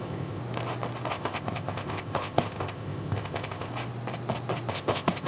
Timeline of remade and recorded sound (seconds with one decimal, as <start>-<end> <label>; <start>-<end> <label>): 0.0-0.4 remade; 0.4-1.1 recorded; 1.1-3.7 remade; 3.7-4.7 recorded; 4.7-5.3 remade